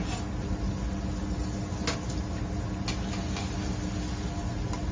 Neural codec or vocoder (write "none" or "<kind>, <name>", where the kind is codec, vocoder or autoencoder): none